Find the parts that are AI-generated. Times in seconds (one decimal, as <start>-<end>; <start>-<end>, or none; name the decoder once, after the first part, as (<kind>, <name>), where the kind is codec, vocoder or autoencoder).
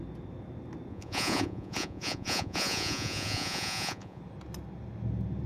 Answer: 0.9-4.2 (vocoder, Vocos)